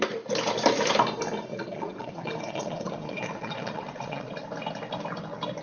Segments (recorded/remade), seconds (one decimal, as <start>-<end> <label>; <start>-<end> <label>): 0.0-1.5 recorded; 1.5-4.3 remade; 4.3-5.6 recorded